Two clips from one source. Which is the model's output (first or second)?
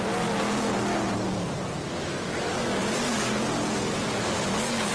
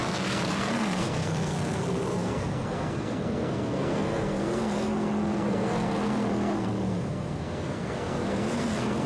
second